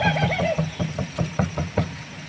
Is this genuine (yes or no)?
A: no